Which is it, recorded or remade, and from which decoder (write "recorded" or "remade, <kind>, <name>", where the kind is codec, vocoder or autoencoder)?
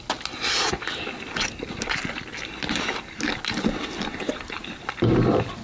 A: recorded